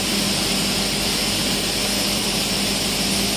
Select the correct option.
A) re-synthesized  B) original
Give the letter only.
B